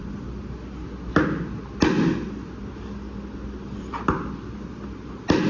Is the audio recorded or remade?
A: recorded